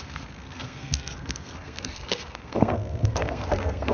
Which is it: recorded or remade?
remade